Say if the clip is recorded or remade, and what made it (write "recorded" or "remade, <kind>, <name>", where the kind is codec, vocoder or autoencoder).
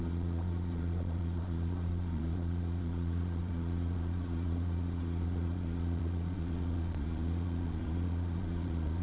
remade, vocoder, Vocos